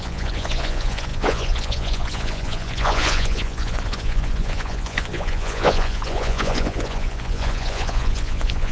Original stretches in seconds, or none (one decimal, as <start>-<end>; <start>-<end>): none